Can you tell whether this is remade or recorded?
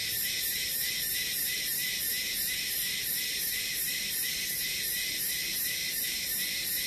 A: remade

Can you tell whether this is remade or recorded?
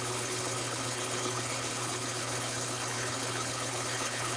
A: remade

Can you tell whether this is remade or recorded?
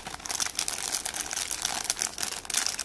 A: recorded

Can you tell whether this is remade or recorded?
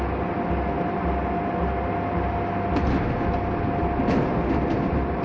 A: recorded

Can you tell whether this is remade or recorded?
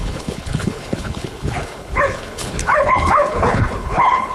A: remade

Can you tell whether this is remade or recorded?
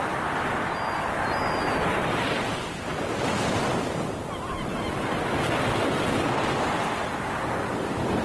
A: recorded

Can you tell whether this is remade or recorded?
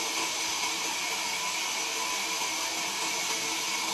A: recorded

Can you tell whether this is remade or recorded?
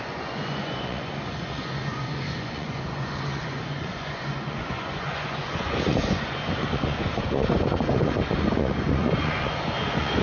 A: remade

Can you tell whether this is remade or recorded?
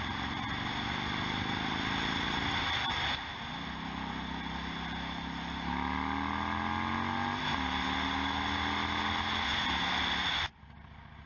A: recorded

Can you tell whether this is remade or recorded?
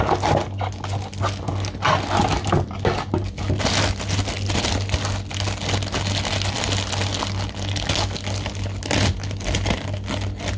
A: recorded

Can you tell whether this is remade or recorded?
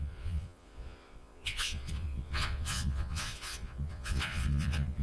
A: remade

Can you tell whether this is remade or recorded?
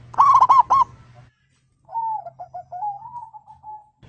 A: recorded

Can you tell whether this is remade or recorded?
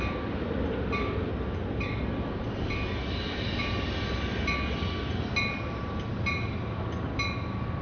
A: recorded